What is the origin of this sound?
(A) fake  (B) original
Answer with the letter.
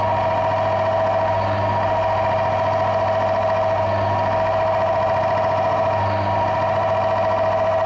B